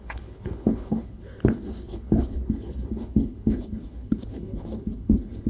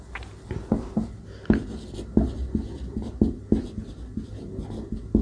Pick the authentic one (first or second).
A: second